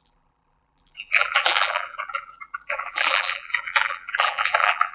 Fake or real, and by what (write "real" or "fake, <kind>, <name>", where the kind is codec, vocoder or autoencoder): fake, vocoder, BigVGAN v2